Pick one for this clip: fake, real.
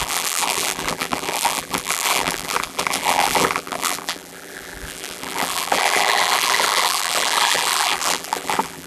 fake